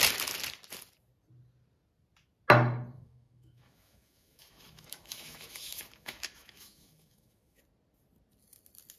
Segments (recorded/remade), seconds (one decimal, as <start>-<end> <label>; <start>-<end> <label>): 0.0-2.9 recorded; 2.9-7.6 remade; 7.6-9.0 recorded